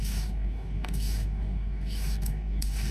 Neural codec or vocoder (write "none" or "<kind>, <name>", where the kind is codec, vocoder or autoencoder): codec, DAC